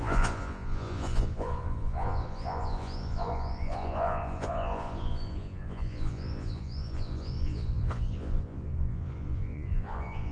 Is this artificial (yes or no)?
yes